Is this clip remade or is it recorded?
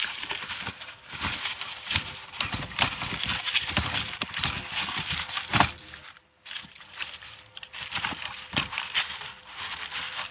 recorded